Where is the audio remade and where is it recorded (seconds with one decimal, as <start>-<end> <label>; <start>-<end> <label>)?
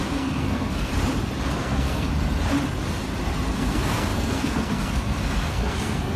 0.0-0.9 remade; 0.9-1.5 recorded; 1.5-2.1 remade; 2.1-3.5 recorded; 3.5-6.2 remade